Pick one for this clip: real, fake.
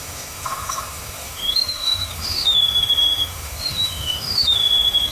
fake